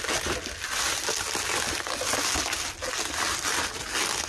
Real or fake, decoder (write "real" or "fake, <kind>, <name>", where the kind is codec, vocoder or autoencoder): real